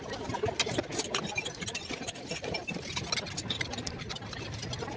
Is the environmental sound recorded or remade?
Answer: recorded